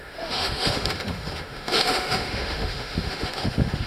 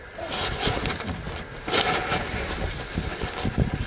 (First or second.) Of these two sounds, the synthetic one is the first